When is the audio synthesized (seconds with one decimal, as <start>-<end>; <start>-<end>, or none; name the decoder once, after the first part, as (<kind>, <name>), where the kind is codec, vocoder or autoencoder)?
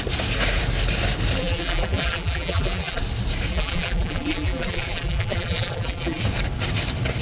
1.4-3.0 (vocoder, BigVGAN v2); 3.5-6.2